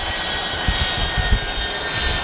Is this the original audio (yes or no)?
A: yes